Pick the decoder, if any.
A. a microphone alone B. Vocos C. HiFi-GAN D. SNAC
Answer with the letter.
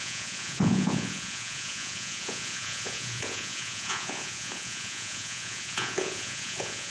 B